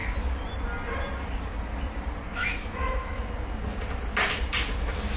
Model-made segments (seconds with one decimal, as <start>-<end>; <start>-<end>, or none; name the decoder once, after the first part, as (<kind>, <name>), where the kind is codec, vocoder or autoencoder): 2.3-3.3 (autoencoder, DAC-VAE)